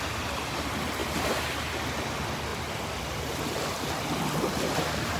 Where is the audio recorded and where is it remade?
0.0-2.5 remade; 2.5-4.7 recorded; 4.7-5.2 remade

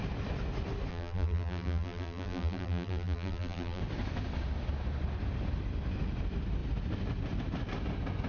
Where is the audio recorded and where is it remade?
0.0-0.9 recorded; 0.9-3.8 remade; 3.8-8.3 recorded

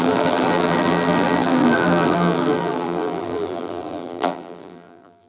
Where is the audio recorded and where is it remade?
0.0-5.3 remade

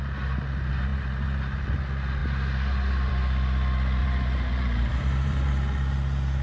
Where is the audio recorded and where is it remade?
0.0-0.9 recorded; 0.9-1.6 remade; 1.6-4.0 recorded; 4.0-5.5 remade; 5.5-6.4 recorded

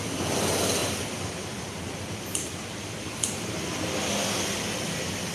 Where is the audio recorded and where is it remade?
0.0-0.8 recorded; 0.8-3.7 remade; 3.7-5.3 recorded

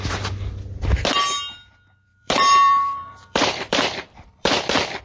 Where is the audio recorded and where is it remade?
0.0-2.1 recorded; 2.1-5.0 remade